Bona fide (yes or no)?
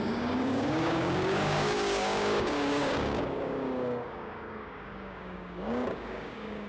no